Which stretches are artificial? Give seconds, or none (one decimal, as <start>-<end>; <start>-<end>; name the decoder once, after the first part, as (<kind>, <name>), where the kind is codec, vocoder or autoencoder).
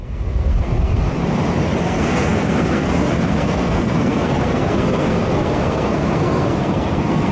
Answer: 0.0-1.1 (codec, SNAC); 1.8-7.3